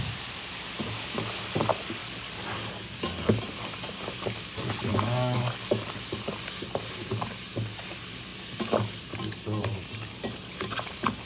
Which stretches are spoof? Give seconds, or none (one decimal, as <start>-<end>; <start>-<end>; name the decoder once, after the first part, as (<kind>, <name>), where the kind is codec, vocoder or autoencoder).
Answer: 2.0-3.3 (codec, DAC); 4.9-5.9